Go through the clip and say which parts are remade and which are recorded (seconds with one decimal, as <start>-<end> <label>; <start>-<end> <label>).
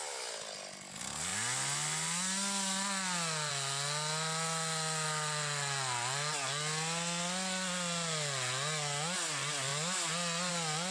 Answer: 0.0-10.9 recorded